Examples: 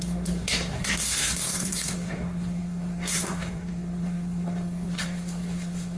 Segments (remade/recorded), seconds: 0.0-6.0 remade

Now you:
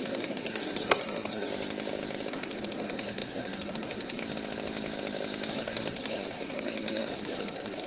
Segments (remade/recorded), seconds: 0.0-1.5 remade; 1.5-2.3 recorded; 2.3-4.2 remade; 4.2-5.5 recorded; 5.5-7.9 remade

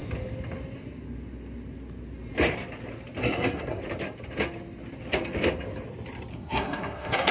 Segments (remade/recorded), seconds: 0.0-3.2 recorded; 3.2-3.8 remade; 3.8-6.3 recorded; 6.3-7.3 remade